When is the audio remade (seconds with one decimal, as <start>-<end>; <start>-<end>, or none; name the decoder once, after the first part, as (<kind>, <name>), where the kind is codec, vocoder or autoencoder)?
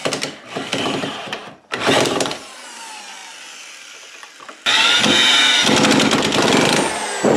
0.8-3.2 (vocoder, BigVGAN v2)